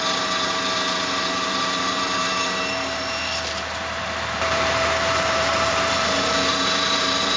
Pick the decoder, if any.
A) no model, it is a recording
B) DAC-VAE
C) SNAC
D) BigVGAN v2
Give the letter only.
D